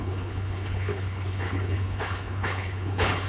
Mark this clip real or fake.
fake